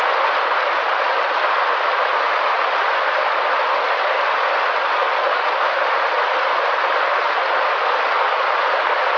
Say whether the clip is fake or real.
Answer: real